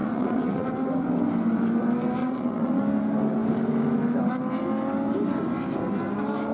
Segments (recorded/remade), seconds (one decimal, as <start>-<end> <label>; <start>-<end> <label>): 0.0-0.7 remade; 0.7-2.2 recorded; 2.2-2.8 remade; 2.8-6.5 recorded